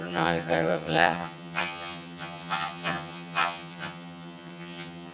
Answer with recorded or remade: remade